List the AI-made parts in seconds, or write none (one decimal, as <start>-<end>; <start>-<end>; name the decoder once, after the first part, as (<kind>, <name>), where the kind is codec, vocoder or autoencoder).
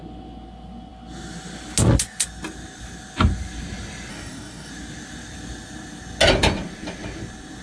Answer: 4.1-4.7 (codec, DAC)